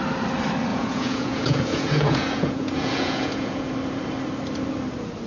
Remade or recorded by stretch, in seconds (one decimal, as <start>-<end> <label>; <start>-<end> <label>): 0.0-0.7 recorded; 0.7-3.7 remade; 3.7-5.3 recorded